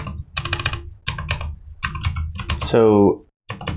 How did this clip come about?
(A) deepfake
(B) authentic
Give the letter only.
B